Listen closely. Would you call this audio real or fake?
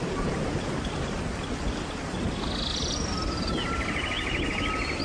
real